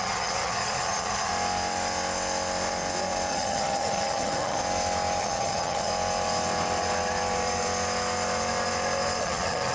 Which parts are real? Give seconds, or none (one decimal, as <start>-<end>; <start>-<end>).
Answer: 1.3-3.3; 4.6-5.2; 5.9-9.2